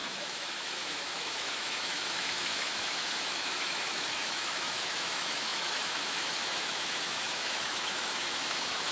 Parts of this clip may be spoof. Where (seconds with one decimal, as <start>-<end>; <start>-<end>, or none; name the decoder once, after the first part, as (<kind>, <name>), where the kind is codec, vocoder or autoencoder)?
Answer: 0.0-8.9 (autoencoder, DAC-VAE)